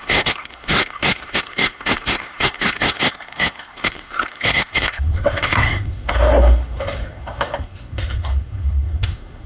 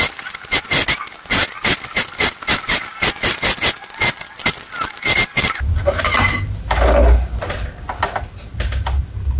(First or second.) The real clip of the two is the second